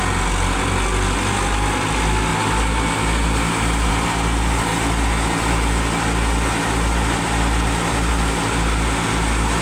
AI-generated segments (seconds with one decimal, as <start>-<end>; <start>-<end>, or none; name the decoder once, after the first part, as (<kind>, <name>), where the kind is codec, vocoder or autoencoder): none